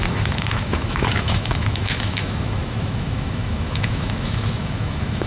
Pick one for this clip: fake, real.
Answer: fake